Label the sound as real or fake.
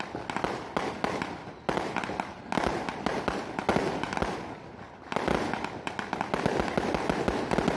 real